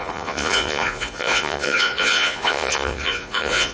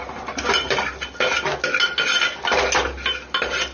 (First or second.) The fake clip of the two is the first